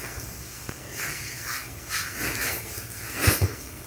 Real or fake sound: fake